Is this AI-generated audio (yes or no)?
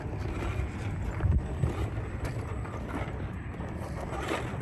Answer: yes